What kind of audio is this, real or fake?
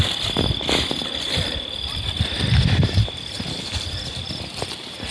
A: real